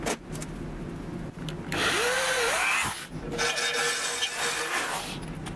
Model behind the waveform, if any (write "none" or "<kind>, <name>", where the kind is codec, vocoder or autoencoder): none